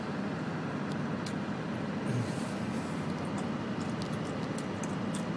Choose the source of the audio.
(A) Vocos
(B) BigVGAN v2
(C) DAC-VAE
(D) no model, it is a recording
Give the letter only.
D